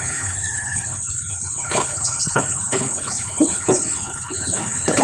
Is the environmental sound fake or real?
fake